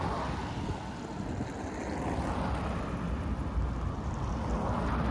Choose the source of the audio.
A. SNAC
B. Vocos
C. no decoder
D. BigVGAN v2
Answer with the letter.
C